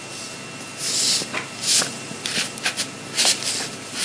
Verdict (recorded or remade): recorded